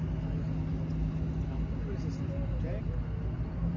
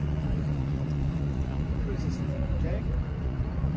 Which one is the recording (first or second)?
first